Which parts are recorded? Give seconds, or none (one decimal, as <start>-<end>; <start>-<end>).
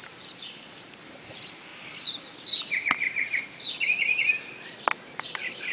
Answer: 1.7-5.1